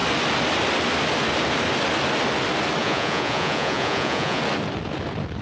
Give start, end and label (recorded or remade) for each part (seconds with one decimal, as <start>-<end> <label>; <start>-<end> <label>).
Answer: 0.0-2.8 recorded; 2.8-4.4 remade; 4.4-5.4 recorded